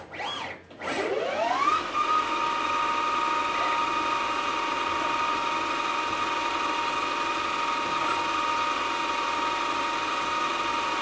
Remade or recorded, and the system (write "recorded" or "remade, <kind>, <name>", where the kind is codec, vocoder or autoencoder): recorded